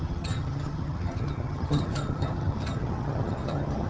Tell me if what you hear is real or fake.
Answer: fake